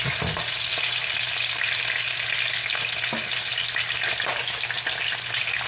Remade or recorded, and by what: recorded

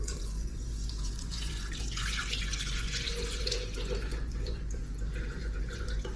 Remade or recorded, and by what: remade, vocoder, Vocos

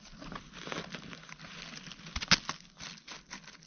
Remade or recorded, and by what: recorded